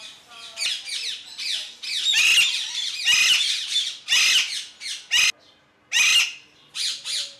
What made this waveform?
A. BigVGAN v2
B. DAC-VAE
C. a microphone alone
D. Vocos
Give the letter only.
C